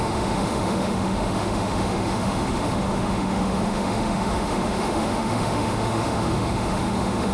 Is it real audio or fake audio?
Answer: fake